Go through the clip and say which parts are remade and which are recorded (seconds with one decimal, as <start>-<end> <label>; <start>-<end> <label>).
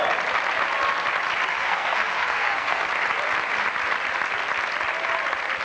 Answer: 0.0-1.5 recorded; 1.5-2.9 remade; 2.9-5.6 recorded